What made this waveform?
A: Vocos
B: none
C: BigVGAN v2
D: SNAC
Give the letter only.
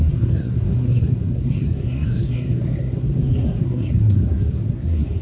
D